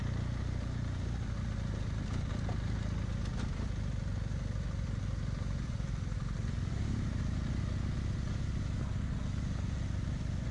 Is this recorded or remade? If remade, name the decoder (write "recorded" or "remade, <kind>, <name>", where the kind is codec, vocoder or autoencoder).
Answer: recorded